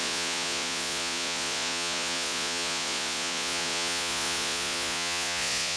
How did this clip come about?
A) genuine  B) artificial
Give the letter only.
B